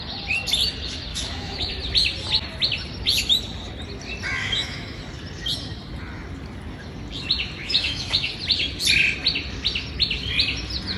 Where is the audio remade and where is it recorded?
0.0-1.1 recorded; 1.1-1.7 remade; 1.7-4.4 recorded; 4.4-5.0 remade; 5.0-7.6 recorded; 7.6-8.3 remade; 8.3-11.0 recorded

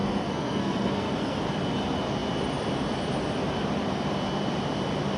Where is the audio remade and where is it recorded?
0.0-1.4 remade; 1.4-5.2 recorded

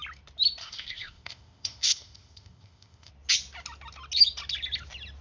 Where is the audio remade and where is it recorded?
0.0-0.6 recorded; 0.6-3.1 remade; 3.1-5.2 recorded

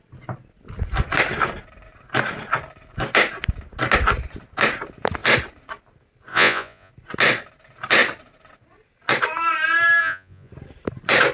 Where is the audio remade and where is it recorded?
0.0-6.3 recorded; 6.3-6.9 remade; 6.9-10.0 recorded; 10.0-10.5 remade; 10.5-11.3 recorded

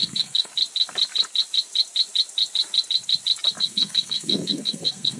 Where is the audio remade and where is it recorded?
0.0-0.5 remade; 0.5-3.6 recorded; 3.6-5.2 remade

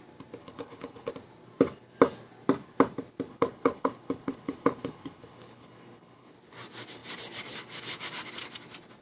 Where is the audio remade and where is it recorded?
0.0-0.4 recorded; 0.4-1.1 remade; 1.1-3.3 recorded; 3.3-6.3 remade; 6.3-9.0 recorded